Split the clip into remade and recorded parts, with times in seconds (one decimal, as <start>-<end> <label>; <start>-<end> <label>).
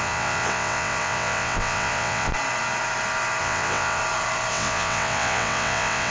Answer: 0.0-2.3 remade; 2.3-3.4 recorded; 3.4-4.0 remade; 4.0-4.5 recorded; 4.5-6.1 remade